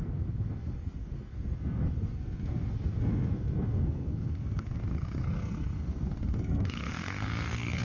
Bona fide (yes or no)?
no